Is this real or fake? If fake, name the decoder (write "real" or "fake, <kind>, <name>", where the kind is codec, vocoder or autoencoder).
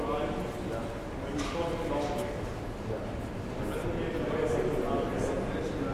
real